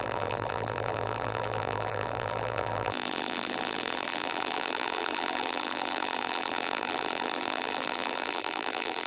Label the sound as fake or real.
fake